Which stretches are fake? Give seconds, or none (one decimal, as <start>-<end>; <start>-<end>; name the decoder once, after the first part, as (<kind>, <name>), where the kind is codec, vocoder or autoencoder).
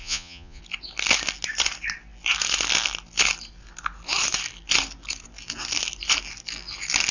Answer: 0.0-0.6 (vocoder, Vocos)